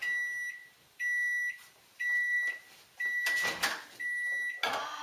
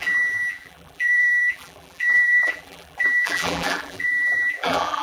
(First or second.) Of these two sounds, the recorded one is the first